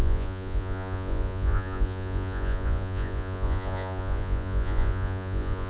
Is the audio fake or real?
fake